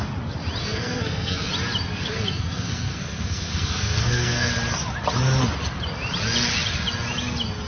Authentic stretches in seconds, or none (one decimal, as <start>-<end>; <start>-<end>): 0.0-0.6; 1.5-1.9; 4.5-7.7